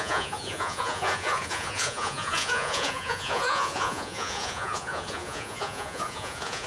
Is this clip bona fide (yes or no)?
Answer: no